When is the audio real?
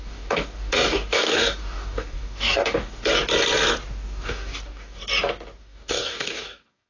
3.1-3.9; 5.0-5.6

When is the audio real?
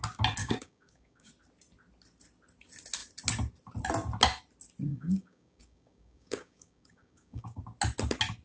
0.0-0.4; 1.3-4.9; 7.6-8.4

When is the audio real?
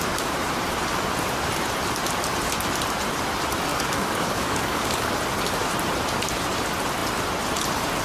0.0-3.7; 5.1-8.0